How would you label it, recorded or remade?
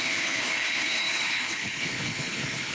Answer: remade